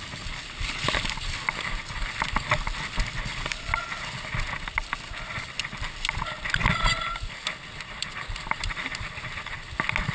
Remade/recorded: recorded